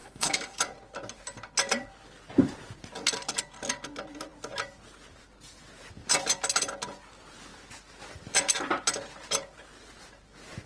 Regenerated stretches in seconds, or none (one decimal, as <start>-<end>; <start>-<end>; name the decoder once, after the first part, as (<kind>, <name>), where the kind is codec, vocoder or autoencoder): 0.0-0.6 (codec, SNAC)